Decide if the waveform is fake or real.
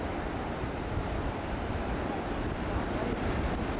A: real